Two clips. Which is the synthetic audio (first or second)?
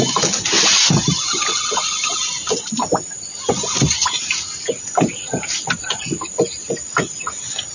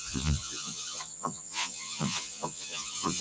second